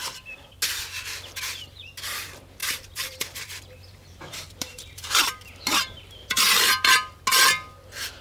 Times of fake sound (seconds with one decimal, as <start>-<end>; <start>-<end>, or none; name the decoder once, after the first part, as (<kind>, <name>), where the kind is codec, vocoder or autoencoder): 2.6-7.2 (vocoder, BigVGAN v2)